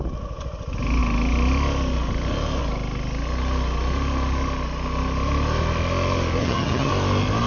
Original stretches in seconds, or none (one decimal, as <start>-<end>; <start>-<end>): 0.0-6.4; 6.9-7.5